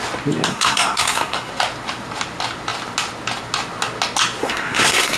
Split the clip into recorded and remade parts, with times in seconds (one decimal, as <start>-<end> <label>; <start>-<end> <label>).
0.0-0.5 recorded; 0.5-1.5 remade; 1.5-4.4 recorded; 4.4-5.2 remade